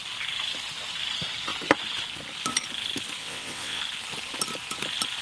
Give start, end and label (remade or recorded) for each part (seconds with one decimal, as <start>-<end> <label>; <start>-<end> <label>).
0.0-3.2 recorded; 3.2-3.8 remade; 3.8-5.2 recorded